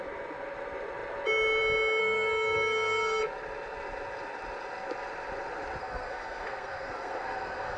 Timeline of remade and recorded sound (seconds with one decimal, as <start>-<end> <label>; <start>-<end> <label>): 0.0-2.0 recorded; 2.0-3.2 remade; 3.2-5.8 recorded; 5.8-7.8 remade